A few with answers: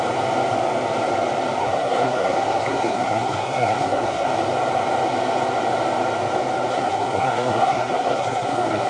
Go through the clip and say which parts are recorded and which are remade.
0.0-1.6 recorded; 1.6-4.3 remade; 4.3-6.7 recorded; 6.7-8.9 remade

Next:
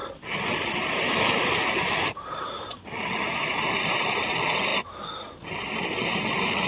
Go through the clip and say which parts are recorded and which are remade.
0.0-6.7 recorded

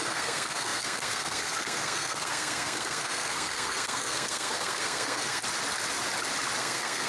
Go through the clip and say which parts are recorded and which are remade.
0.0-5.4 remade; 5.4-6.6 recorded; 6.6-7.1 remade

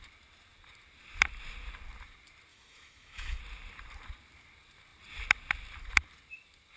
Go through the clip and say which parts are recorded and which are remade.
0.0-2.5 recorded; 2.5-3.4 remade; 3.4-6.8 recorded